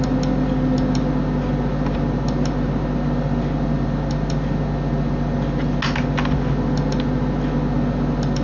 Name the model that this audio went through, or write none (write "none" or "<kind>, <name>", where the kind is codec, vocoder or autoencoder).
none